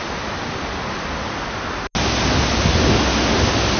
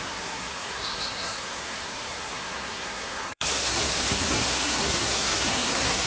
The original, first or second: first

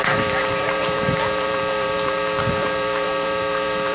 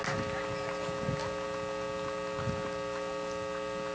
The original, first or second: second